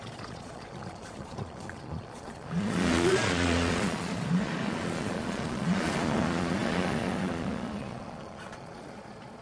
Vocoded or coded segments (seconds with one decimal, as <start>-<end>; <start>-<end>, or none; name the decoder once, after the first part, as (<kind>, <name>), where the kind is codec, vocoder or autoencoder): 0.0-9.4 (vocoder, Vocos)